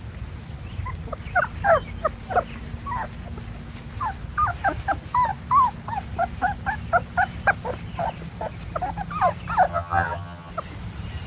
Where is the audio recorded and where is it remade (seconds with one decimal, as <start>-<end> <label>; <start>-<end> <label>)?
0.0-9.7 recorded; 9.7-10.5 remade; 10.5-11.3 recorded